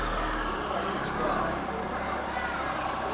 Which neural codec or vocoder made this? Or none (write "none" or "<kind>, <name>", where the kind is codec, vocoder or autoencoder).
none